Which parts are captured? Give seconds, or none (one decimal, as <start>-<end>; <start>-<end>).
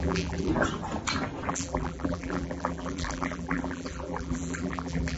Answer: 0.5-1.5